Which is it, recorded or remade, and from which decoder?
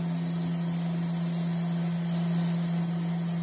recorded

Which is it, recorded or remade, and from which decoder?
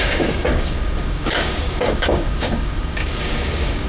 remade, codec, DAC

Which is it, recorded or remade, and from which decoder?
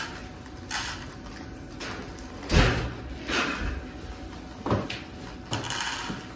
recorded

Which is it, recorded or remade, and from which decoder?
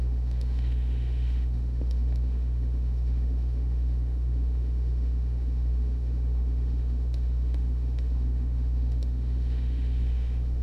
remade, autoencoder, DAC-VAE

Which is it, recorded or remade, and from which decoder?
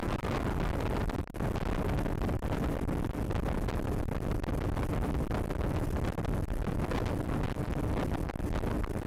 recorded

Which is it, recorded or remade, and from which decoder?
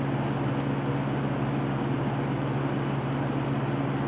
recorded